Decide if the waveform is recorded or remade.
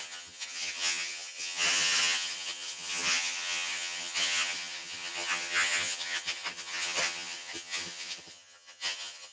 remade